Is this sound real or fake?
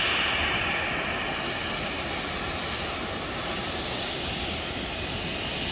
real